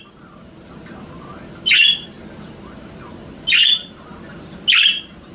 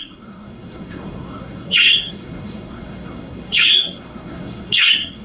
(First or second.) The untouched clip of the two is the first